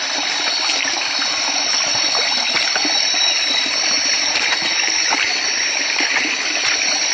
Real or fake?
real